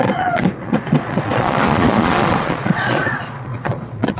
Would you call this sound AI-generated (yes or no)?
yes